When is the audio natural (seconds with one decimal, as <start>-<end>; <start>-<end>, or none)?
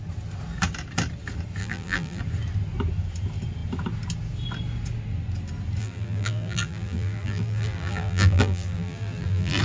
0.0-1.6; 2.2-5.8